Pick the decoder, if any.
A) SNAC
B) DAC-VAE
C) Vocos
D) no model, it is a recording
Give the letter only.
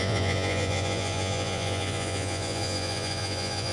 C